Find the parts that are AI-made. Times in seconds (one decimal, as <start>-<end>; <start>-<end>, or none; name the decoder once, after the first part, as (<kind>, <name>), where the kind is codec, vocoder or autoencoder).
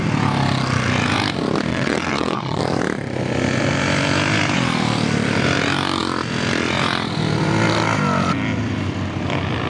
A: 1.7-2.6 (vocoder, WaveNeXt)